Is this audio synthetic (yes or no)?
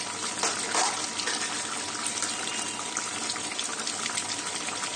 no